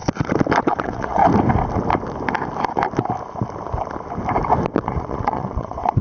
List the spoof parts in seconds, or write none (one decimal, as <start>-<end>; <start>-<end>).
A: 0.6-1.2; 4.8-6.0